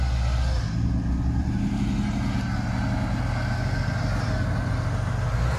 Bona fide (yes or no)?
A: yes